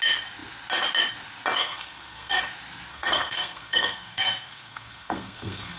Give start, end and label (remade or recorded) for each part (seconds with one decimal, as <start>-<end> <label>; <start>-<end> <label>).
0.0-1.6 recorded; 1.6-2.4 remade; 2.4-2.9 recorded; 2.9-5.8 remade